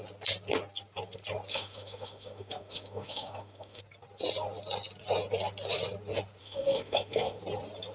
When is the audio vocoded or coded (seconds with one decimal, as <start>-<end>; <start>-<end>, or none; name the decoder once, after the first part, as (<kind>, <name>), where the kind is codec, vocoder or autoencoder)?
1.5-3.8 (autoencoder, DAC-VAE); 6.4-7.4